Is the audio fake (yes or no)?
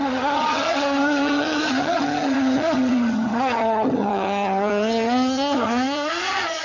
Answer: yes